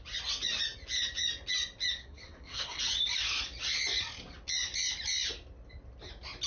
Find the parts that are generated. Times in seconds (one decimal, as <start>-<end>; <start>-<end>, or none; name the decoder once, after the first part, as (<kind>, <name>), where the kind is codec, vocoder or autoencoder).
2.0-2.8 (codec, SNAC)

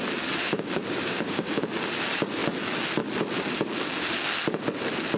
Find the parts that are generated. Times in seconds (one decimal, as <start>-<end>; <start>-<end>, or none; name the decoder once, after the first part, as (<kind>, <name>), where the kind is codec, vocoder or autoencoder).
0.4-1.6 (codec, DAC)

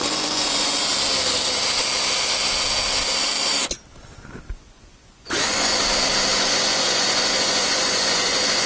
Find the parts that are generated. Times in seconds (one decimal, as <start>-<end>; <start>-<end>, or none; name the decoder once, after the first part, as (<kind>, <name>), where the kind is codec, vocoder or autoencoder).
0.0-0.9 (vocoder, Vocos); 4.5-5.8; 6.4-8.7

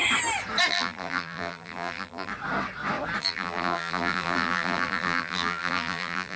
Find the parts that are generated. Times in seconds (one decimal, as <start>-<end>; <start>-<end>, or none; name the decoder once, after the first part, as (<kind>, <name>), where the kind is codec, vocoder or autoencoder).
0.7-2.3 (vocoder, BigVGAN v2); 3.2-6.4

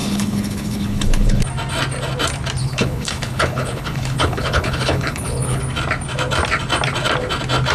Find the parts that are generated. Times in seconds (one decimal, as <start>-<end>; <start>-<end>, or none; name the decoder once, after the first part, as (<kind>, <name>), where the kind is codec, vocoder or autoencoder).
0.0-1.4 (codec, HILCodec); 2.6-5.6

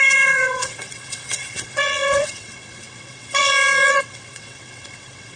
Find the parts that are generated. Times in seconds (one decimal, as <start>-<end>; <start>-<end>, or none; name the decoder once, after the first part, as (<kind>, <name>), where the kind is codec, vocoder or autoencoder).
0.0-5.4 (vocoder, WaveNeXt)

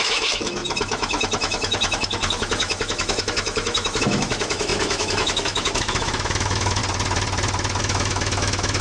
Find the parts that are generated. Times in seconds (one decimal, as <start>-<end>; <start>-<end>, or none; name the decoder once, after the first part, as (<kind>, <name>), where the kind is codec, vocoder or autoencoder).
0.0-6.8 (autoencoder, DAC-VAE); 7.8-8.8

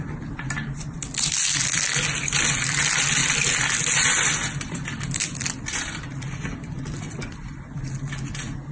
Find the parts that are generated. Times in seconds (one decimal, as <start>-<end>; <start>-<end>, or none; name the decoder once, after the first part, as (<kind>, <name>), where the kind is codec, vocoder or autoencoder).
none